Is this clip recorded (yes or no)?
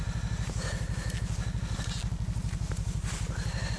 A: yes